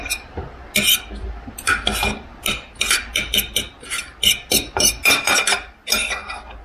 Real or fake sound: real